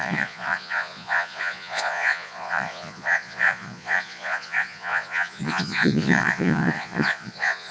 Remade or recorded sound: remade